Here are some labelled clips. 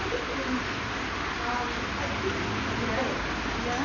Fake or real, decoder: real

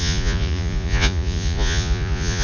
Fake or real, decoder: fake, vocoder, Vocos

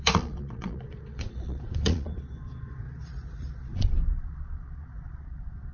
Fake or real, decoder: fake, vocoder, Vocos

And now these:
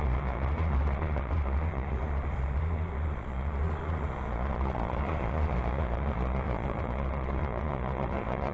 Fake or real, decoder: fake, vocoder, Vocos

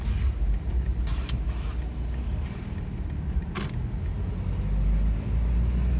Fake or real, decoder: real